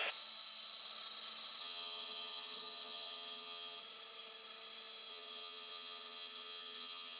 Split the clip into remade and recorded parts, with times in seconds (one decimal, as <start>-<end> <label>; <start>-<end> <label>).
0.0-1.6 recorded; 1.6-3.8 remade; 3.8-5.1 recorded; 5.1-7.2 remade